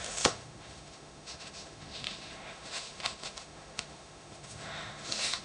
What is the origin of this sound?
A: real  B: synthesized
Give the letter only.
B